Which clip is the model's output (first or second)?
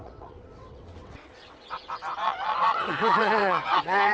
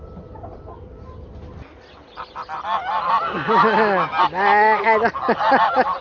first